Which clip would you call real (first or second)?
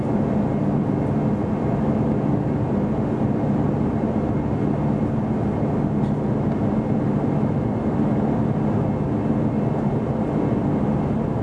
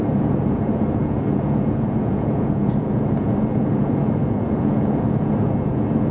first